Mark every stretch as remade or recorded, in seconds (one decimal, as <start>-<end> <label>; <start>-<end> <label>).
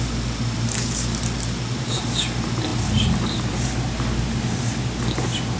0.0-5.6 recorded